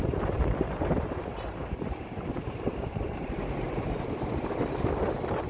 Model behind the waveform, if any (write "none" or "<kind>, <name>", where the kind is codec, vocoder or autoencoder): vocoder, BigVGAN v2